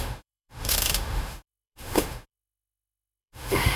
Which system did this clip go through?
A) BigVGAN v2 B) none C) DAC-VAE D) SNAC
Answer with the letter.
C